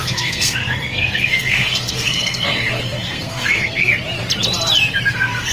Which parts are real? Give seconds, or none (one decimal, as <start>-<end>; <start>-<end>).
3.9-5.1